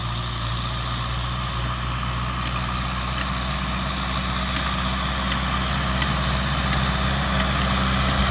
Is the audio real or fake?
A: real